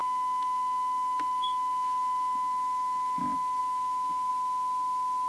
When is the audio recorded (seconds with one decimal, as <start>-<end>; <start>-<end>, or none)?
3.2-3.6; 4.3-5.3